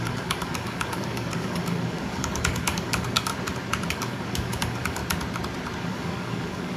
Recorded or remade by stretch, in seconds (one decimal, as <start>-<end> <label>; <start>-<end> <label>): 0.0-3.3 remade; 3.3-3.9 recorded; 3.9-5.0 remade; 5.0-5.8 recorded; 5.8-6.8 remade

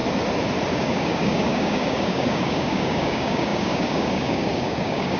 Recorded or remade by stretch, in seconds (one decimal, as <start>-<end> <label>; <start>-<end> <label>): 0.0-0.7 recorded; 0.7-5.2 remade